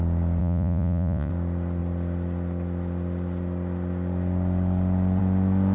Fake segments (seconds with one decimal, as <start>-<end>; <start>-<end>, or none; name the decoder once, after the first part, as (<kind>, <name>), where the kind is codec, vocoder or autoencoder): 0.4-1.3 (vocoder, Vocos)